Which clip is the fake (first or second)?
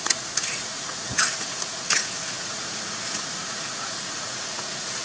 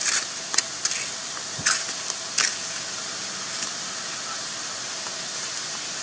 first